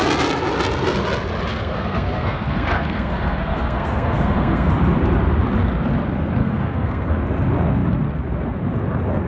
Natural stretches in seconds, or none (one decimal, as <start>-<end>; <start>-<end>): 0.0-1.5; 4.7-6.4; 7.1-9.3